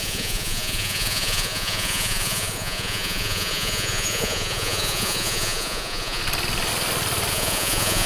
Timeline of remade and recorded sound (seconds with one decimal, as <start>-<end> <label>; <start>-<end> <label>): 0.0-6.2 remade; 6.2-7.3 recorded; 7.3-8.1 remade